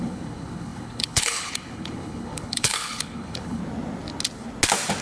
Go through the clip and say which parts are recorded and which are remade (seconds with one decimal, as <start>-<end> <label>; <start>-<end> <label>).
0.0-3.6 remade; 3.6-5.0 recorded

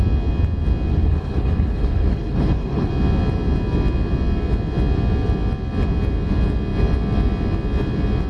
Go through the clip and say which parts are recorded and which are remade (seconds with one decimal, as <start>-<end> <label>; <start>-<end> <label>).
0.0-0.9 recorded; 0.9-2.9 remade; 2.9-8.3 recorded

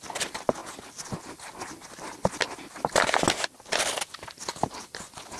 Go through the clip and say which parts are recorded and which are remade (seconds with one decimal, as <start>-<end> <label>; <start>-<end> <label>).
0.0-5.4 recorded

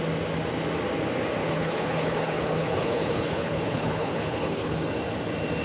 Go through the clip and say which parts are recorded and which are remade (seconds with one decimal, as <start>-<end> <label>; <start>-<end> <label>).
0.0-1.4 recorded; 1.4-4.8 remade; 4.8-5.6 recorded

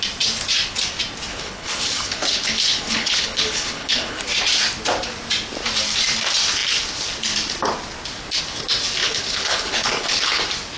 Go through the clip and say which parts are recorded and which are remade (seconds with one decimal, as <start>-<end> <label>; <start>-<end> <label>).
0.0-1.3 recorded; 1.3-4.2 remade; 4.2-9.0 recorded; 9.0-10.4 remade; 10.4-10.8 recorded

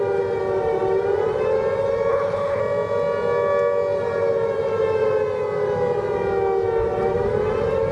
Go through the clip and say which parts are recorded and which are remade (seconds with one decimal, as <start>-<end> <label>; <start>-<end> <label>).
0.0-2.1 recorded; 2.1-2.6 remade; 2.6-7.9 recorded

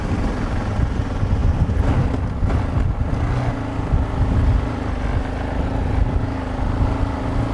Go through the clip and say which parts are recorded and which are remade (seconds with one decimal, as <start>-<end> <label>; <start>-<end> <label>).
0.0-7.5 recorded

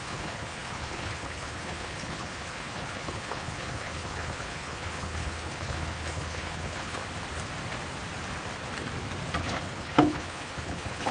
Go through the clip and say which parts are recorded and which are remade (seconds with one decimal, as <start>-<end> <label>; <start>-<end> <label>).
0.0-7.0 remade; 7.0-9.4 recorded; 9.4-11.1 remade